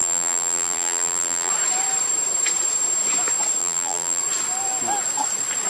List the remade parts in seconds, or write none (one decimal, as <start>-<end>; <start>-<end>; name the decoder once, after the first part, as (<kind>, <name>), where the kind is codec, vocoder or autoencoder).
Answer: 0.0-1.5 (vocoder, BigVGAN v2); 3.6-4.2

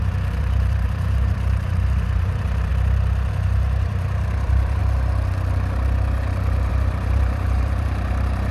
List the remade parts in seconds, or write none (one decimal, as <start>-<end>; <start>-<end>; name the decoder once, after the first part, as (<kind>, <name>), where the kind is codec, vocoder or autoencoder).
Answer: 0.0-2.7 (vocoder, BigVGAN v2); 3.3-4.8; 6.7-8.5